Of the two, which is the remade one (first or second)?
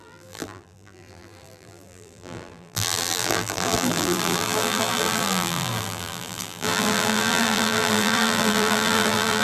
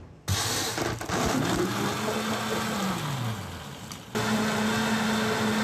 first